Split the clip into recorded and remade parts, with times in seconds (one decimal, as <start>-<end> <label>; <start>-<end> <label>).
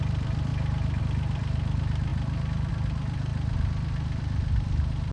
0.0-0.5 remade; 0.5-1.0 recorded; 1.0-3.3 remade; 3.3-5.1 recorded